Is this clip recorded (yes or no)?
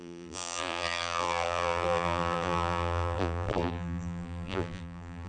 no